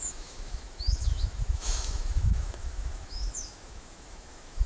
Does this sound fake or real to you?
fake